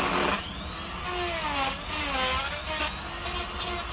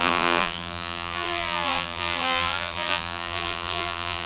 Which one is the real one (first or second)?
first